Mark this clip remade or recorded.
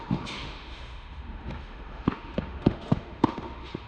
remade